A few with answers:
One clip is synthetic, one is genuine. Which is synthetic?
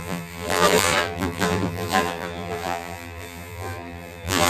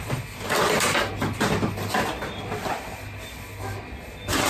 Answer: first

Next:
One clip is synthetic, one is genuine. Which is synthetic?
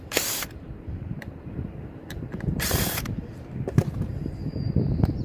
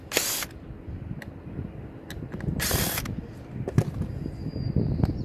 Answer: first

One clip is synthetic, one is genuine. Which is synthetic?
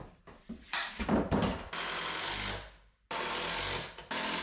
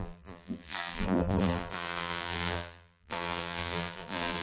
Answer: second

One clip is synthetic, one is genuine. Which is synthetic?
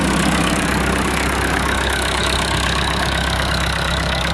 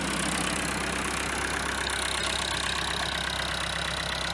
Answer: first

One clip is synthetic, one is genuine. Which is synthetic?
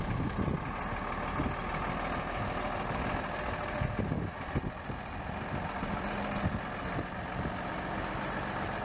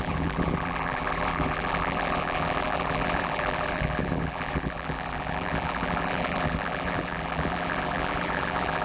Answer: second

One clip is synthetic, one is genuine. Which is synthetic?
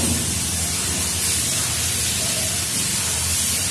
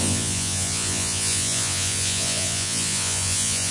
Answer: second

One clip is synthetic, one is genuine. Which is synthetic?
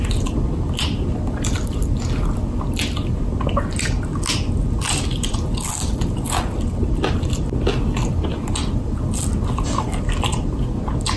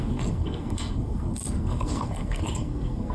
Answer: second